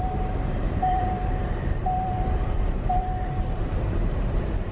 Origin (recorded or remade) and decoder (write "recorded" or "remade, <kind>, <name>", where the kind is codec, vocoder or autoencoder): remade, vocoder, BigVGAN v2